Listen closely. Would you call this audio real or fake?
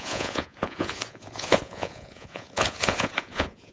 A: fake